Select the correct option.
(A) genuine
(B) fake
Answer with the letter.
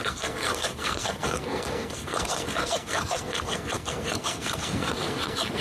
B